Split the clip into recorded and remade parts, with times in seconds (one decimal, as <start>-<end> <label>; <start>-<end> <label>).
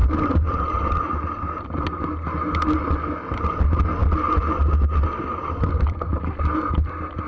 0.0-0.8 remade; 0.8-7.3 recorded